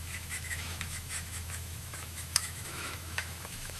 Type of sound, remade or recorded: remade